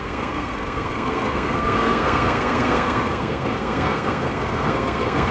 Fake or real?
fake